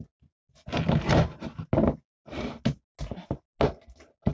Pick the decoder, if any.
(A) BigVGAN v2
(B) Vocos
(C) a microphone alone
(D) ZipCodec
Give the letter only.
C